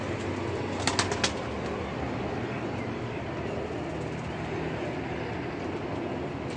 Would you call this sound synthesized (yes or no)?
no